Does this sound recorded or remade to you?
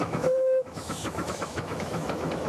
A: remade